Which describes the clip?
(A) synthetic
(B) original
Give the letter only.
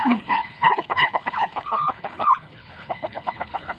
A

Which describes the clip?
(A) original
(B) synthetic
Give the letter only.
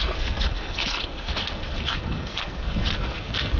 B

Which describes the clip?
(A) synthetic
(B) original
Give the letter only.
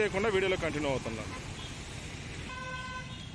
B